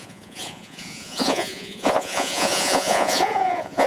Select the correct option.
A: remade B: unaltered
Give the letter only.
A